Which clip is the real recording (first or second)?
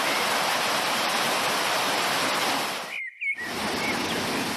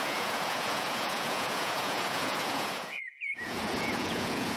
first